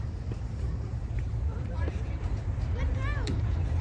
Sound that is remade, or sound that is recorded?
remade